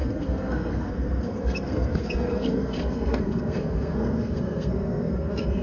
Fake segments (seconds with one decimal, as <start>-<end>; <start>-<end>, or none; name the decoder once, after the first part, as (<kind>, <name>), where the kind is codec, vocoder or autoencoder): 0.0-5.6 (codec, SNAC)